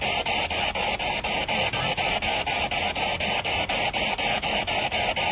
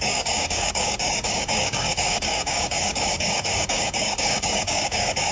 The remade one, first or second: second